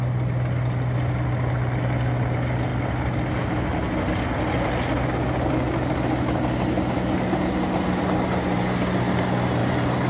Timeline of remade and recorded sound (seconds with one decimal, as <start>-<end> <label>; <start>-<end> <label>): 0.0-9.6 recorded; 9.6-10.1 remade